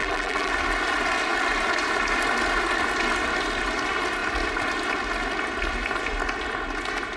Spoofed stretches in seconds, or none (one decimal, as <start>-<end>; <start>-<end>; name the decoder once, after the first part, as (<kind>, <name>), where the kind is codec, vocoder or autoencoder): 0.0-0.5 (vocoder, BigVGAN v2)